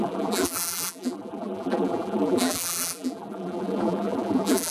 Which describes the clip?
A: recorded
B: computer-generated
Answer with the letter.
B